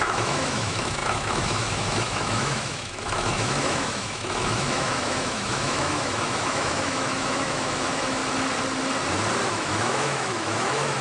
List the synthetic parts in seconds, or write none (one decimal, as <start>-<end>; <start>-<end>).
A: 0.0-8.2; 9.5-11.0